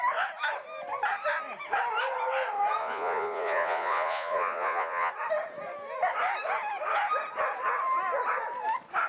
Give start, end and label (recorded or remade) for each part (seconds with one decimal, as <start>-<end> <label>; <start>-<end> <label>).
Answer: 0.0-2.8 recorded; 2.8-5.1 remade; 5.1-9.1 recorded